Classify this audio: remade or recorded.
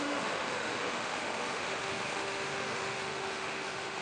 remade